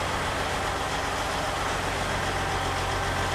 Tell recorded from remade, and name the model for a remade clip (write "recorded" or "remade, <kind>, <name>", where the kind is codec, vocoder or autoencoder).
recorded